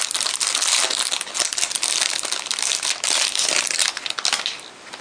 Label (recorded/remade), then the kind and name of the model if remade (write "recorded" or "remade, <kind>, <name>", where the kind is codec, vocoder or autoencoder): recorded